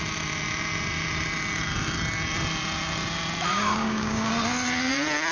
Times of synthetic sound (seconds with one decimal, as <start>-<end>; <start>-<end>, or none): 3.5-4.3